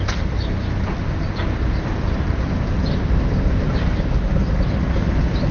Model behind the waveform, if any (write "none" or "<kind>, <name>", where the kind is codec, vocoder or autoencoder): none